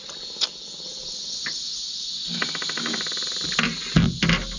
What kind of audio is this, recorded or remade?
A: recorded